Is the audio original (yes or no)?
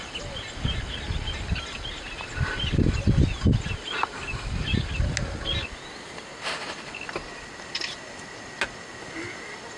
yes